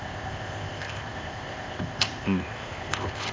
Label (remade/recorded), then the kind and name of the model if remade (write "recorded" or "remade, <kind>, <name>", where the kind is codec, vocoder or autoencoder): remade, codec, ZipCodec